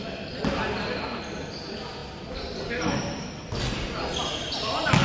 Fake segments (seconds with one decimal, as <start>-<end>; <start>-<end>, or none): none